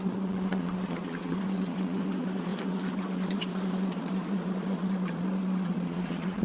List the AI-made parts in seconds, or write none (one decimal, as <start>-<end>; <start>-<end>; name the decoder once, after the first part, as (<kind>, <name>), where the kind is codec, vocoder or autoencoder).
0.0-6.4 (vocoder, Vocos)